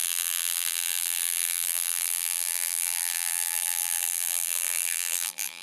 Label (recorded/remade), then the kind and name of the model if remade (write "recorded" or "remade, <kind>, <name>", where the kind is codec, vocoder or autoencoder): remade, vocoder, BigVGAN v2